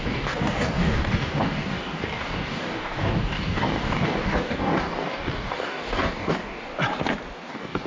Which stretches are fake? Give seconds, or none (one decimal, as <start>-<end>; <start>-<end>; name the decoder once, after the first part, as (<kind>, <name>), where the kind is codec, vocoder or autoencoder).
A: 0.0-6.7 (codec, DAC); 7.5-7.9